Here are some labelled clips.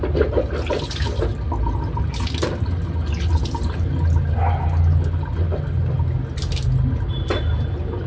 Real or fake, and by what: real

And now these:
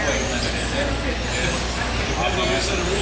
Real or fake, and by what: real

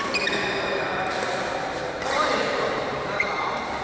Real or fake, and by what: fake, vocoder, BigVGAN v2